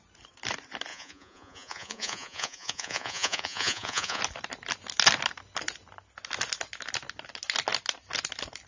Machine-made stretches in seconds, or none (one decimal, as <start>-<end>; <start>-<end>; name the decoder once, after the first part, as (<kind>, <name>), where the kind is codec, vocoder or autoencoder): 0.9-4.2 (vocoder, Vocos)